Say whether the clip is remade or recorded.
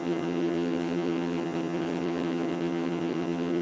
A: remade